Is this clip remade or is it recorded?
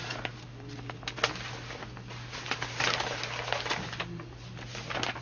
recorded